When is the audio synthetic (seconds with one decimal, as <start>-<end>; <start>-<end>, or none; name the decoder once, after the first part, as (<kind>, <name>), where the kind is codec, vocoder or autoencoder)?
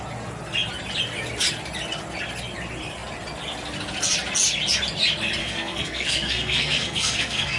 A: 5.4-7.6 (codec, SNAC)